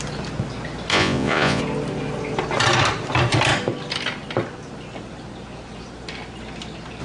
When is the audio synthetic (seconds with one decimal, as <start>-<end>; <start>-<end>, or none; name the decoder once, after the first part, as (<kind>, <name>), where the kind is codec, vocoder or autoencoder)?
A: 0.9-1.6 (vocoder, Vocos)